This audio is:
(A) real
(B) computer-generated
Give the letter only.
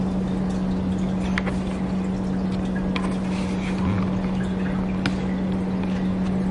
A